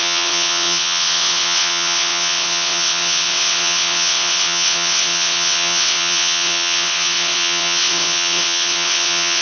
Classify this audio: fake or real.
fake